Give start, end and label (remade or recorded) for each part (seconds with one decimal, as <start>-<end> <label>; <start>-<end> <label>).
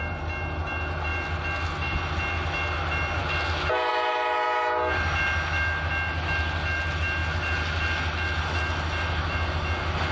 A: 0.0-10.1 recorded